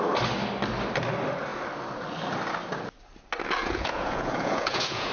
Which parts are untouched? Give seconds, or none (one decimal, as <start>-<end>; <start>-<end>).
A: 0.0-3.6